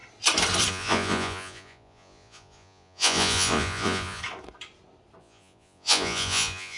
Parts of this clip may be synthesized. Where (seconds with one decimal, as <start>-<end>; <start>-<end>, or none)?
0.7-4.2; 5.2-6.8